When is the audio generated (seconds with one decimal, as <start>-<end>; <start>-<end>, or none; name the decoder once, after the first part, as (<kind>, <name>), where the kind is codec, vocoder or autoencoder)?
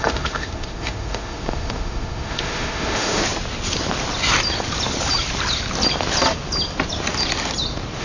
0.0-3.2 (autoencoder, DAC-VAE)